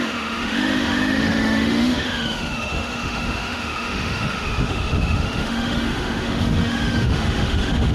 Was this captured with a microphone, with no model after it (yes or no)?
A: no